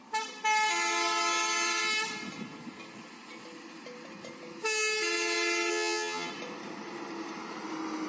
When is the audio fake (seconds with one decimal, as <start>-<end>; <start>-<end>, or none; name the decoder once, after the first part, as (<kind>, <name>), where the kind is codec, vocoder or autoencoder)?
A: 5.7-6.3 (vocoder, HiFi-GAN)